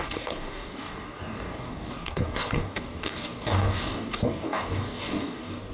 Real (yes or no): no